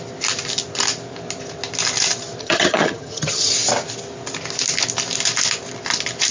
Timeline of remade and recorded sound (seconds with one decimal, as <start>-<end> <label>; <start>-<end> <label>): 0.0-2.4 recorded; 2.4-3.5 remade; 3.5-6.3 recorded